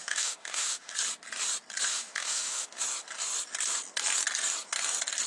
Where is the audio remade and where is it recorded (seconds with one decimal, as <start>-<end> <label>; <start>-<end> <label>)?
0.0-0.9 remade; 0.9-1.9 recorded; 1.9-2.8 remade; 2.8-5.3 recorded

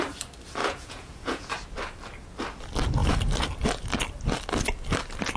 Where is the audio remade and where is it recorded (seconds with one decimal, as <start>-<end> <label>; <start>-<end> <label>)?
0.0-0.6 recorded; 0.6-1.5 remade; 1.5-5.4 recorded

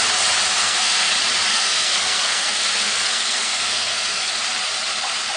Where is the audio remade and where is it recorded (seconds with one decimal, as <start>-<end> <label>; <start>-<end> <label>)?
0.0-0.6 recorded; 0.6-1.1 remade; 1.1-1.5 recorded; 1.5-4.3 remade; 4.3-5.4 recorded

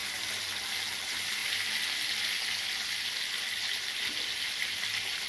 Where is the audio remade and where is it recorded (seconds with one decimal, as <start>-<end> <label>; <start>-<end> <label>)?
0.0-5.3 recorded

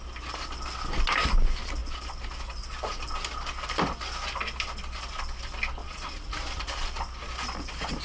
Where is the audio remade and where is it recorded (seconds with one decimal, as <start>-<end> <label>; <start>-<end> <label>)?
0.0-5.8 recorded; 5.8-6.3 remade; 6.3-8.0 recorded

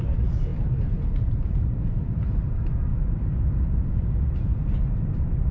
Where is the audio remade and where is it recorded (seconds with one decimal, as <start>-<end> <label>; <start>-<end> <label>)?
0.0-2.9 remade; 2.9-3.7 recorded; 3.7-5.5 remade

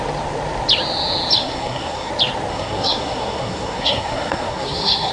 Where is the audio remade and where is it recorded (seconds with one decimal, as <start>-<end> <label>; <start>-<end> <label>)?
0.0-1.4 recorded; 1.4-2.1 remade; 2.1-2.5 recorded; 2.5-5.1 remade

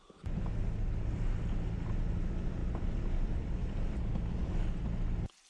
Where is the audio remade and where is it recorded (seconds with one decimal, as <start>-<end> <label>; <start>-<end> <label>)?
0.0-5.5 recorded